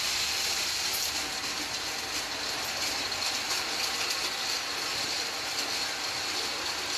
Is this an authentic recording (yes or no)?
yes